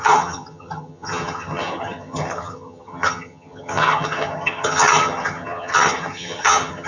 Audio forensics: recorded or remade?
remade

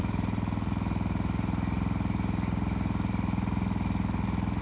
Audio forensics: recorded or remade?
recorded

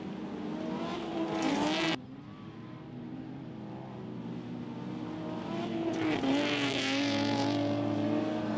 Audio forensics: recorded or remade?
recorded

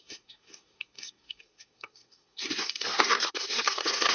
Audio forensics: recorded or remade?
remade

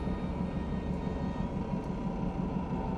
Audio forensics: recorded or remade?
recorded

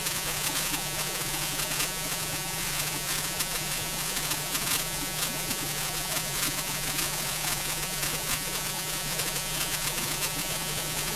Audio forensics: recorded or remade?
remade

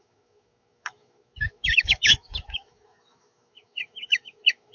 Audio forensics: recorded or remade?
remade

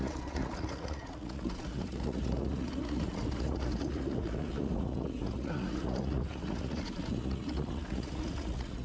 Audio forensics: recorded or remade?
remade